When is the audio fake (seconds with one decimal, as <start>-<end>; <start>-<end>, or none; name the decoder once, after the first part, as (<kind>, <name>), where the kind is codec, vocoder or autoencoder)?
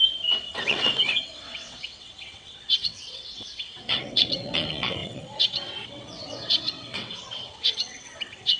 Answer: 0.0-8.6 (vocoder, WaveNeXt)